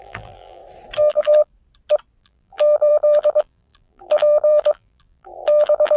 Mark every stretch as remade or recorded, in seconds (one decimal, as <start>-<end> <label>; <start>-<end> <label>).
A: 0.0-0.6 remade; 0.6-1.1 recorded; 1.1-1.5 remade; 1.5-2.2 recorded; 2.2-6.0 remade